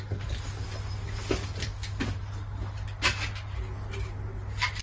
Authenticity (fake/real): real